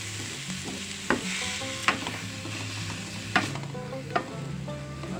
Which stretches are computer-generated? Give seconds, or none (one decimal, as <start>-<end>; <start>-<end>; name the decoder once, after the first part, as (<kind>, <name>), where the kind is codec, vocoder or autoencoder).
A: none